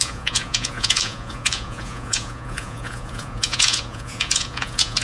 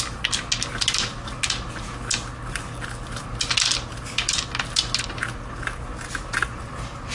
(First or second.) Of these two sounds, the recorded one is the second